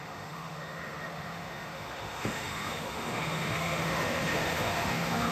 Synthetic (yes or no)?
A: yes